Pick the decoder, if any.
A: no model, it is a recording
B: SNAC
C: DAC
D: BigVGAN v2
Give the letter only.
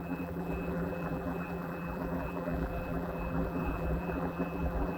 D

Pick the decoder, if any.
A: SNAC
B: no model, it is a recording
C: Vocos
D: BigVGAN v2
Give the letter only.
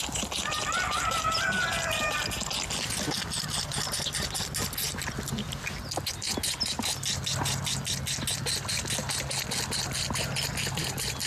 B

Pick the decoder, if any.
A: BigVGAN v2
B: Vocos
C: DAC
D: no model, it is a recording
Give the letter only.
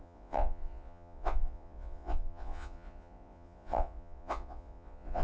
B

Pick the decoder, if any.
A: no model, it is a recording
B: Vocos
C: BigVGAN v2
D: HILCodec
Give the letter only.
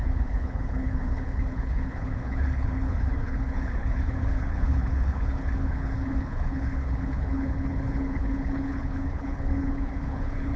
D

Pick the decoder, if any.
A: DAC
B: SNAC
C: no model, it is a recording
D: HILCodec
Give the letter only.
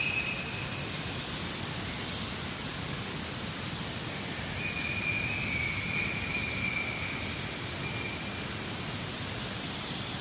C